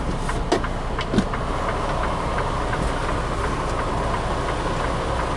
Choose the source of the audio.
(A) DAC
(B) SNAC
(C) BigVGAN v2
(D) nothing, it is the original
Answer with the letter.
D